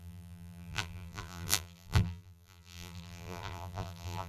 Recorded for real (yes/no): no